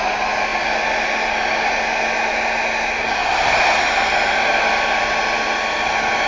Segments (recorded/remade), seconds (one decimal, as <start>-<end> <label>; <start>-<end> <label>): 0.0-6.3 recorded